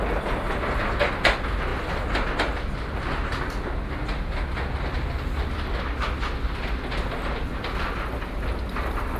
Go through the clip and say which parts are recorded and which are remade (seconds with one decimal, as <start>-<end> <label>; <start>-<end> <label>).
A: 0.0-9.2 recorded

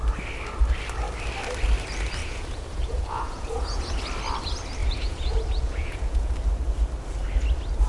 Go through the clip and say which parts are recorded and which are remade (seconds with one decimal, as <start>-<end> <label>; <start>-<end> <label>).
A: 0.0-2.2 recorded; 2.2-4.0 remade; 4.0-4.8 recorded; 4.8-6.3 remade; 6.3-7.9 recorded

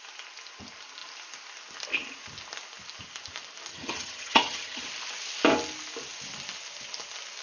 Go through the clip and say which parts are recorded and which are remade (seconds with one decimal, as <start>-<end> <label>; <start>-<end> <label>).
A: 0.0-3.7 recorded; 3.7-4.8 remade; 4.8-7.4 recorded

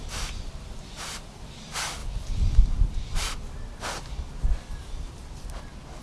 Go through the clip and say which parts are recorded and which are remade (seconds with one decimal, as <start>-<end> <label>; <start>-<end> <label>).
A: 0.0-6.0 recorded